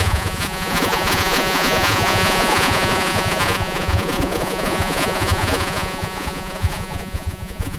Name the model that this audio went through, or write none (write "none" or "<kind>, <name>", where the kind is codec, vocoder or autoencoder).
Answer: vocoder, Vocos